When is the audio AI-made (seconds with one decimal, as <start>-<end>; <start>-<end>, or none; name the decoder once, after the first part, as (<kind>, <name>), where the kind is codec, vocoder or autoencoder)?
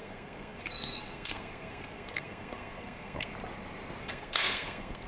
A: 0.0-3.3 (codec, SNAC); 4.0-5.1